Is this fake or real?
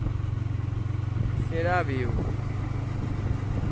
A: real